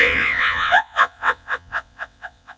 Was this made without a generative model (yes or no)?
no